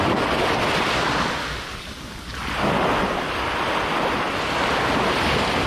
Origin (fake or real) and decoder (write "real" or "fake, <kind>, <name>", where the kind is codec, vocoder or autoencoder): real